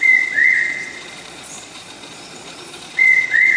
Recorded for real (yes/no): no